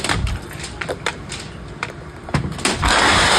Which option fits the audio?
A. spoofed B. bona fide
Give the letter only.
B